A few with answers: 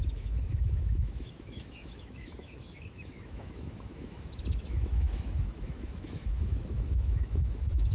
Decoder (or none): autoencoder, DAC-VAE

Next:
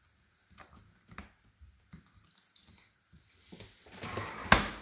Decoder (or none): none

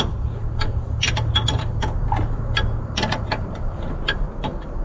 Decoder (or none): none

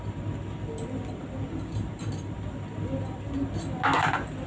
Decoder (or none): none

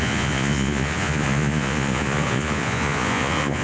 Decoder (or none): vocoder, Vocos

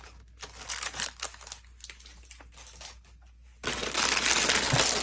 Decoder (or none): none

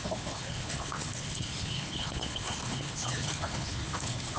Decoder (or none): codec, HILCodec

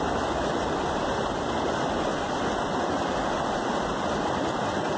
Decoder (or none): none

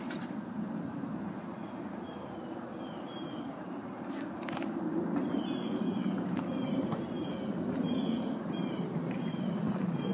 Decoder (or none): vocoder, BigVGAN v2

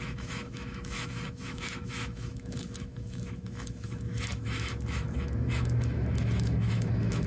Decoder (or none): autoencoder, DAC-VAE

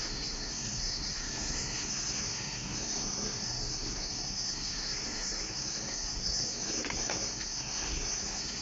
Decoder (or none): codec, SNAC